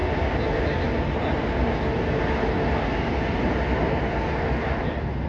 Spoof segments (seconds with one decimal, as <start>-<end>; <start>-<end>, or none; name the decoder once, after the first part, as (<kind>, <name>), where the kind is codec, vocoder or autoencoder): none